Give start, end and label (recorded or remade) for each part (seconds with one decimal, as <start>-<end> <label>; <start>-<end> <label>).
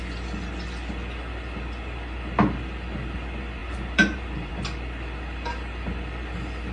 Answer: 0.0-3.6 recorded; 3.6-4.5 remade; 4.5-6.7 recorded